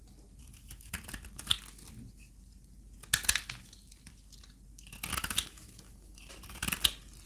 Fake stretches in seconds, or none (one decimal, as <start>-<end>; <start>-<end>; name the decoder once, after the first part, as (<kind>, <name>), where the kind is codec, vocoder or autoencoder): 0.4-0.9 (autoencoder, DAC-VAE); 5.1-6.3